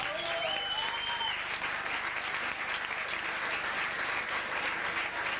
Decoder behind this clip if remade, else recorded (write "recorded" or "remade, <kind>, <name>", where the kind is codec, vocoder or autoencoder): recorded